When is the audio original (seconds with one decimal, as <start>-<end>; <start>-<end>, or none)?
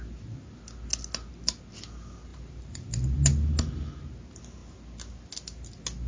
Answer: 0.0-2.3; 2.9-6.1